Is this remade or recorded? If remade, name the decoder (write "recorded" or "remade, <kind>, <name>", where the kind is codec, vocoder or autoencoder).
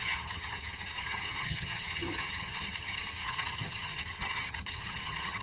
remade, vocoder, HiFi-GAN